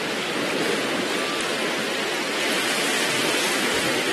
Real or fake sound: real